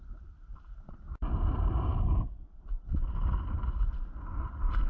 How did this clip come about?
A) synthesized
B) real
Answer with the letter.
B